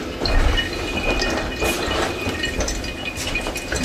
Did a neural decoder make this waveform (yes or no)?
no